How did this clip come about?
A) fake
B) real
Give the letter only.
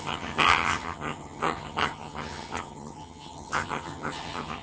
A